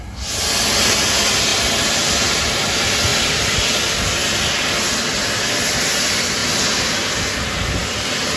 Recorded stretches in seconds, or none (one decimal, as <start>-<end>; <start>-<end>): 0.0-8.4